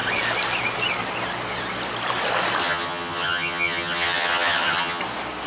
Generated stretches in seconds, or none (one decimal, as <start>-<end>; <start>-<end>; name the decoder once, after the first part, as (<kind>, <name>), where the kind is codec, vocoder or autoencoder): 2.6-5.0 (vocoder, HiFi-GAN)